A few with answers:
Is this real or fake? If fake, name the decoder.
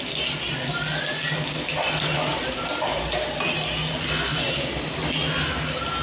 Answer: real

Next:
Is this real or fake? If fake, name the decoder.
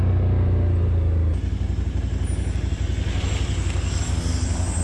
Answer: real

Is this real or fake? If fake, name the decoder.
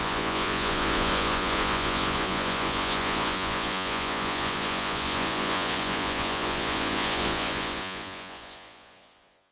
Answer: fake, vocoder, Vocos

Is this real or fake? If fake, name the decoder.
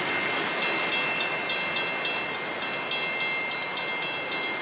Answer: real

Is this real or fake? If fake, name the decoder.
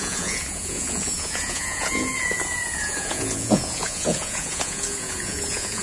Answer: fake, vocoder, Vocos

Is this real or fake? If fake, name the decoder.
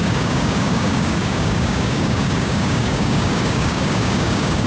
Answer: fake, codec, DAC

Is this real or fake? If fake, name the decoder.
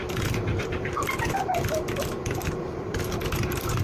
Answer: real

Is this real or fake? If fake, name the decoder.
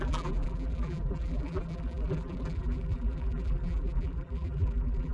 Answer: fake, vocoder, BigVGAN v2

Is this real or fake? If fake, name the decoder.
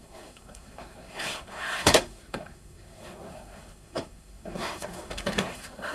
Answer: fake, codec, SNAC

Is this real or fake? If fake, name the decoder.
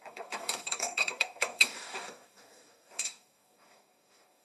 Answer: fake, codec, DAC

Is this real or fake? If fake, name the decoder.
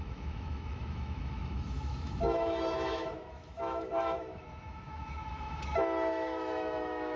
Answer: fake, autoencoder, DAC-VAE